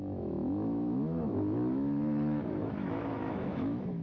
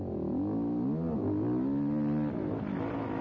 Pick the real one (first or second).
second